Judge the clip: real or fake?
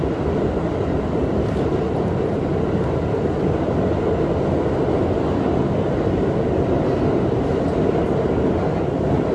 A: real